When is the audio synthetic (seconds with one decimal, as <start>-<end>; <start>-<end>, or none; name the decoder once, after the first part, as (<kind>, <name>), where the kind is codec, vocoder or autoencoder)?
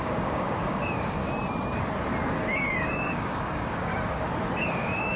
0.0-1.2 (codec, DAC); 2.3-3.9; 4.6-5.2